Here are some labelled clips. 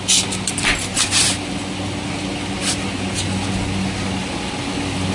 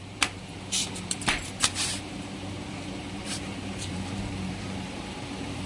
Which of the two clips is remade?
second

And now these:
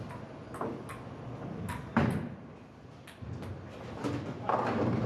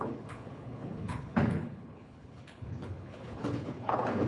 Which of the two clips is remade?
second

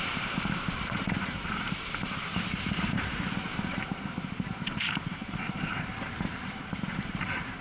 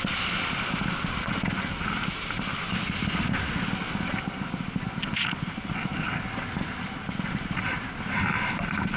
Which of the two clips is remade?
first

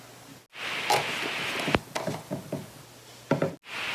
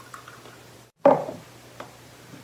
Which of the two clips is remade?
second